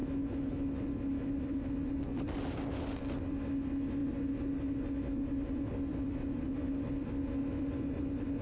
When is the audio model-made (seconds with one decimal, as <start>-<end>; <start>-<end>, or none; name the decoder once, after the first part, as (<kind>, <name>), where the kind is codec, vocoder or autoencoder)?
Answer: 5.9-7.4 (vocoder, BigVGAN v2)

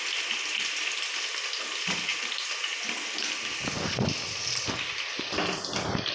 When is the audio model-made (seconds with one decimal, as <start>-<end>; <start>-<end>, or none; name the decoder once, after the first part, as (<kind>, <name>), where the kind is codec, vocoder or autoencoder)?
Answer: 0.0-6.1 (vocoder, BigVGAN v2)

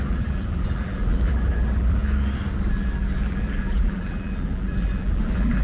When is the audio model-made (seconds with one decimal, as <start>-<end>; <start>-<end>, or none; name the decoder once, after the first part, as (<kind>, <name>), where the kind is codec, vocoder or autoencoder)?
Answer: 0.0-2.0 (vocoder, BigVGAN v2); 2.7-5.6

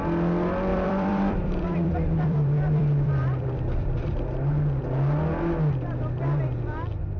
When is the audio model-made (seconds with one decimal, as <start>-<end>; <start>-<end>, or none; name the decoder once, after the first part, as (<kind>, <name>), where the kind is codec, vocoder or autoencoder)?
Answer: 0.7-4.5 (vocoder, BigVGAN v2)